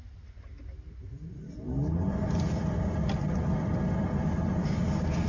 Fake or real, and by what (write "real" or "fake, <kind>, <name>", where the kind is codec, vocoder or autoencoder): real